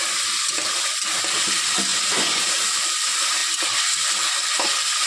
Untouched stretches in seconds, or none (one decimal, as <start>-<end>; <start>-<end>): 0.0-1.9; 2.5-5.1